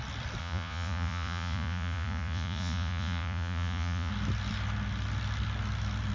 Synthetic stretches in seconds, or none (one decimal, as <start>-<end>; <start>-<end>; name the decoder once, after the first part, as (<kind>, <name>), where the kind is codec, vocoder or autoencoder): 0.4-4.1 (vocoder, Vocos)